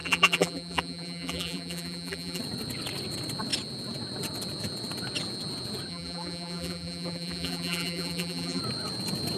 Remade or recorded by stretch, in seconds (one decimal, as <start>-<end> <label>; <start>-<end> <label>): 0.0-2.4 remade; 2.4-5.9 recorded; 5.9-8.6 remade; 8.6-9.4 recorded